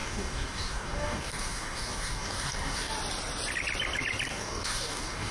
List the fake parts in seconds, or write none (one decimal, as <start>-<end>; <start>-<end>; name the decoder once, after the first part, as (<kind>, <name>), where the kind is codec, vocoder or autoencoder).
0.0-2.9 (codec, DAC); 4.3-5.3